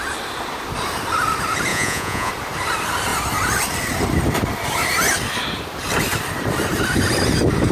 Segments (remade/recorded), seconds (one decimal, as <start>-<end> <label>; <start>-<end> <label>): 0.0-1.7 recorded; 1.7-2.3 remade; 2.3-7.7 recorded